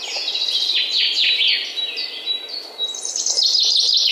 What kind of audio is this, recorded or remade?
recorded